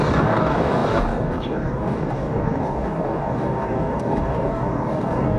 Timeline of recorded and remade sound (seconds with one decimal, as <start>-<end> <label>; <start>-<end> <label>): 0.0-5.4 remade